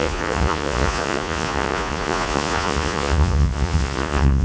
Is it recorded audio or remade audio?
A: remade